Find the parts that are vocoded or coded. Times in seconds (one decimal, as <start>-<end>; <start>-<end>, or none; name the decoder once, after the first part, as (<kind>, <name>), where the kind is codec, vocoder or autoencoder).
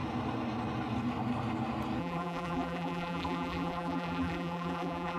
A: 2.0-5.2 (vocoder, BigVGAN v2)